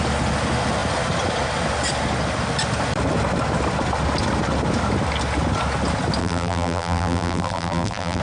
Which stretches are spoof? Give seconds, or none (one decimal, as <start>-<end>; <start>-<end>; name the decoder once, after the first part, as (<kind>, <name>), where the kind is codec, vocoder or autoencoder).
6.2-8.2 (vocoder, BigVGAN v2)